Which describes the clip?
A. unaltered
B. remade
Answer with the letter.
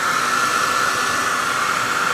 A